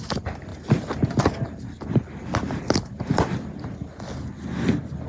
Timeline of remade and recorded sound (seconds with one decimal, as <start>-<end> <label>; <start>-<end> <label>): 0.0-5.1 recorded